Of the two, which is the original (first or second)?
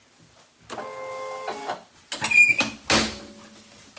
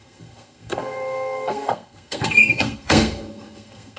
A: first